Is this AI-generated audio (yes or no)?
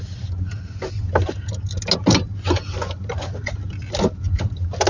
no